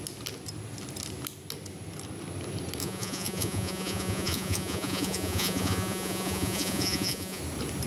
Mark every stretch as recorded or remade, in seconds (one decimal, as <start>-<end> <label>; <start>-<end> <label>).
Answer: 0.0-2.8 recorded; 2.8-7.4 remade; 7.4-7.9 recorded